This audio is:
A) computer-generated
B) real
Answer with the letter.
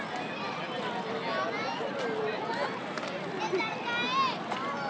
B